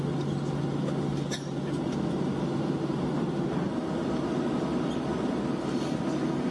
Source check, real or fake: real